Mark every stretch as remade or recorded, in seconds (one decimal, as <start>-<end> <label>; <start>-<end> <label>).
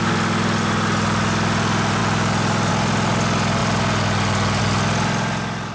0.0-5.7 recorded